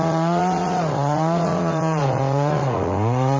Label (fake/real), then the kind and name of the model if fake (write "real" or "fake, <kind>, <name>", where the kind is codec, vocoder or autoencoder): fake, vocoder, Vocos